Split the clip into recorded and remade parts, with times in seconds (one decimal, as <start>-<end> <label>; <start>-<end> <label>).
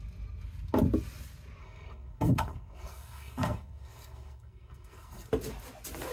0.0-1.6 recorded; 1.6-5.3 remade; 5.3-6.1 recorded